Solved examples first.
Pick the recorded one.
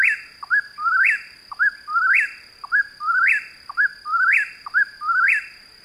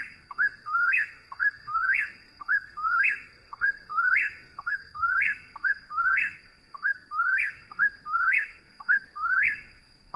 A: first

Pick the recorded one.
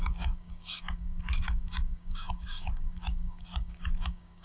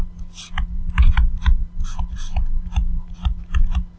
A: second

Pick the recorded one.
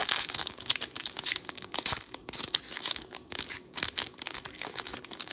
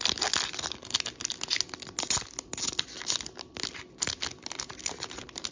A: second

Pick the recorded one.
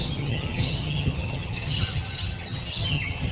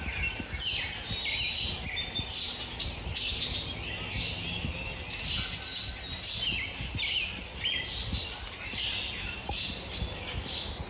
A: second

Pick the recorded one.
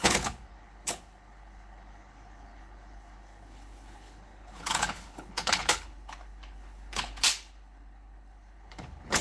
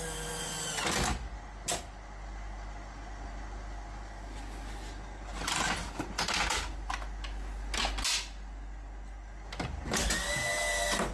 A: second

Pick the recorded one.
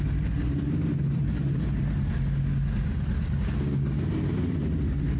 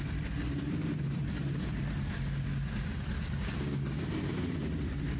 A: first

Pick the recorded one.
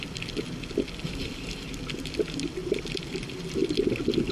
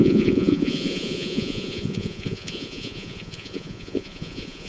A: first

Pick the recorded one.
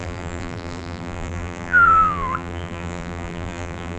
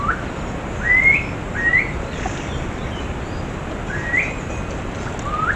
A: second